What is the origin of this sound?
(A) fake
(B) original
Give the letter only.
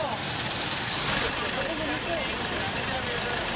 B